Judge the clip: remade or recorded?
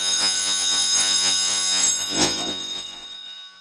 remade